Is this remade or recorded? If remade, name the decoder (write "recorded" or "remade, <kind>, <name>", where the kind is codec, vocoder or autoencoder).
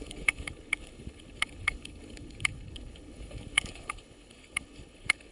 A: remade, codec, HILCodec